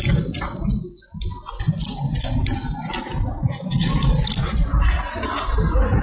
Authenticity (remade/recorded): recorded